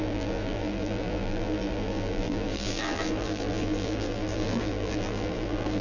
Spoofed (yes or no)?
yes